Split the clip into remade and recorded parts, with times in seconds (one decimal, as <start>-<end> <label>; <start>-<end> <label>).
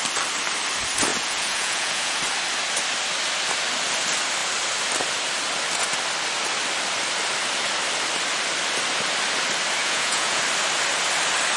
0.0-1.1 recorded; 1.1-2.2 remade; 2.2-9.8 recorded; 9.8-10.4 remade; 10.4-11.6 recorded